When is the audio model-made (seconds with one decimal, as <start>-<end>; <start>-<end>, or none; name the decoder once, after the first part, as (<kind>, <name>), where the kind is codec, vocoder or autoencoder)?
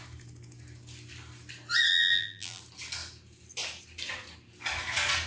1.9-2.6 (vocoder, BigVGAN v2)